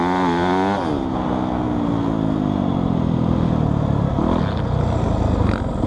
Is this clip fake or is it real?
real